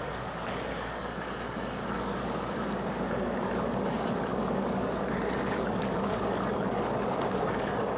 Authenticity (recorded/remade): remade